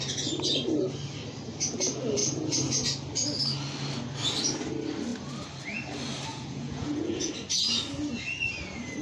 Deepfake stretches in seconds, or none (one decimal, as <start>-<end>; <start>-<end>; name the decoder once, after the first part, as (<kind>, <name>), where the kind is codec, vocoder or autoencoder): 6.3-7.3 (vocoder, Vocos)